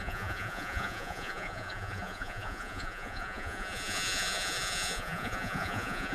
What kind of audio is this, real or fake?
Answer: fake